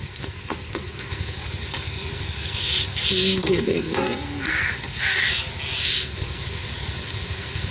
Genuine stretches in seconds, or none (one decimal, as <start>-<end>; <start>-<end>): 5.3-5.8